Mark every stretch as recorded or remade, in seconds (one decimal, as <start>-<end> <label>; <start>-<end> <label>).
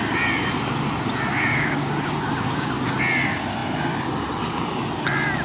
0.0-1.5 recorded; 1.5-3.0 remade; 3.0-5.4 recorded